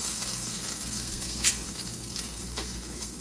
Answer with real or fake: fake